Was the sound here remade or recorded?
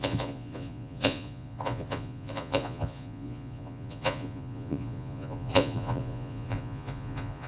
remade